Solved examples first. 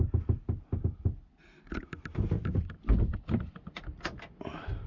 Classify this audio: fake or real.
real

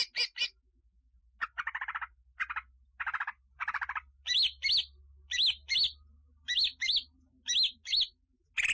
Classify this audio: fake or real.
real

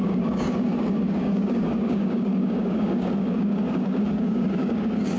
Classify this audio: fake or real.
fake